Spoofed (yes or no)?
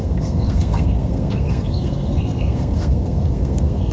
yes